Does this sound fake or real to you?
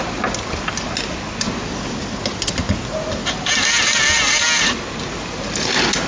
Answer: real